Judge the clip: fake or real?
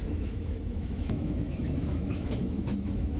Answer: fake